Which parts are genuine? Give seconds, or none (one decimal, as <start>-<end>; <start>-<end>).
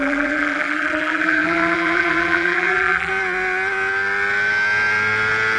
3.1-5.6